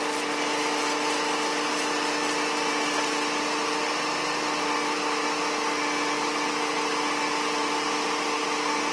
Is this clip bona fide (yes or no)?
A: yes